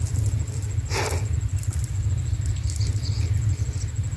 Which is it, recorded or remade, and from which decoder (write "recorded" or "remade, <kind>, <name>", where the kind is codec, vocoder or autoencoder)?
recorded